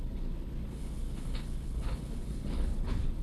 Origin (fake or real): fake